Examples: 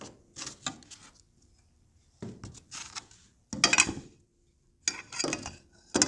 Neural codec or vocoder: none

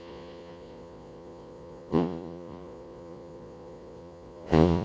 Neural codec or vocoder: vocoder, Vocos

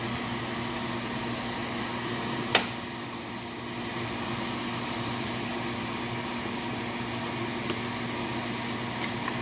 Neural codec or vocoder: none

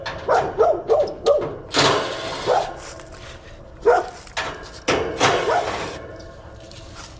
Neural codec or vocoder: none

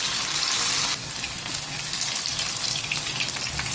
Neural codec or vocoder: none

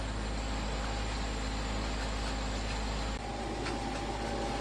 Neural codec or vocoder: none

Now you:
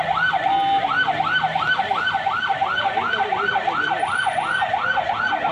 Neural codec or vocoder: none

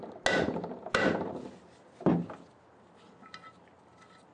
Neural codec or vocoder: none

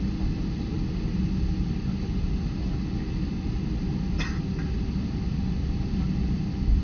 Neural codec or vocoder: none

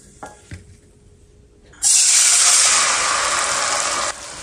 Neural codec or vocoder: none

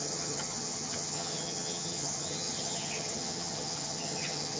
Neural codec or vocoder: vocoder, HiFi-GAN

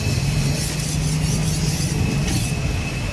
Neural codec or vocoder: none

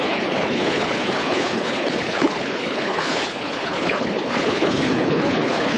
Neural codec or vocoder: codec, HILCodec